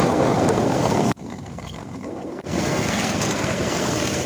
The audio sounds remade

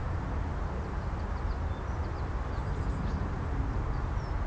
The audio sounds recorded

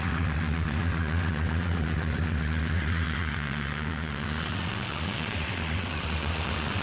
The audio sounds remade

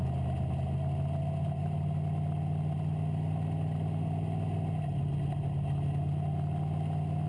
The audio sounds recorded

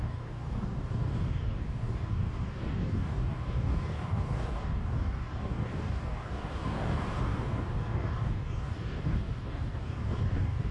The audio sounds remade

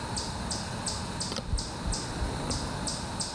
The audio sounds recorded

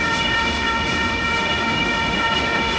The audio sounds remade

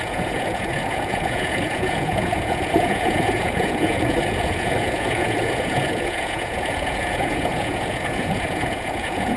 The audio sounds remade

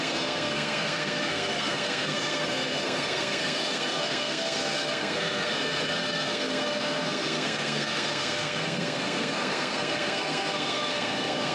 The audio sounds remade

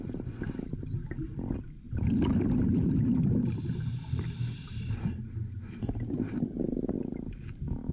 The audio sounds recorded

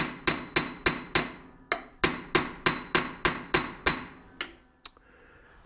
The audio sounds recorded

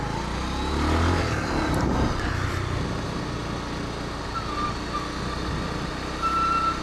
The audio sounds recorded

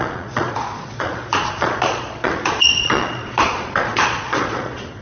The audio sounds remade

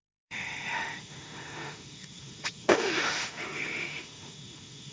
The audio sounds remade